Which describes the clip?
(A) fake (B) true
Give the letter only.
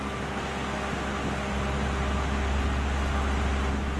B